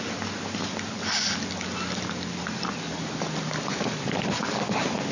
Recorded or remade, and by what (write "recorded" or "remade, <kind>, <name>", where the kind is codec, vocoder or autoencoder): recorded